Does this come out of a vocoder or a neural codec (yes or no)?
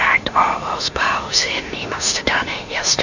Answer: yes